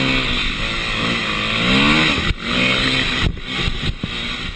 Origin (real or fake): real